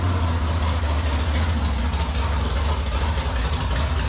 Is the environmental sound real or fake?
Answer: real